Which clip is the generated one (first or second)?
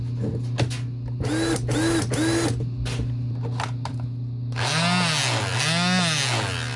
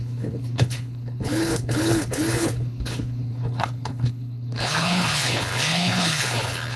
second